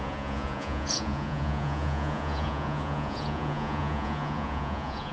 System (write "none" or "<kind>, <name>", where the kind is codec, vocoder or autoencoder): vocoder, Vocos